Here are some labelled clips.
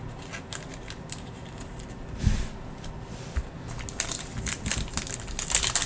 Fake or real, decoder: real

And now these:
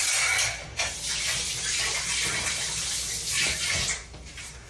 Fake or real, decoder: real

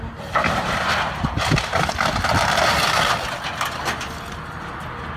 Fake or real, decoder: real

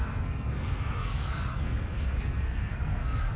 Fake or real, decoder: fake, codec, SNAC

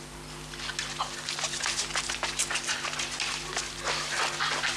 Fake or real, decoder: real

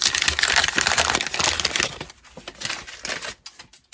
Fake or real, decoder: real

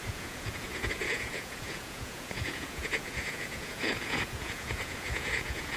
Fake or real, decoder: fake, vocoder, Vocos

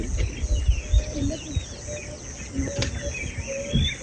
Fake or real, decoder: real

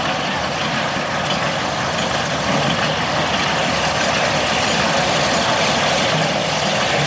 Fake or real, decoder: real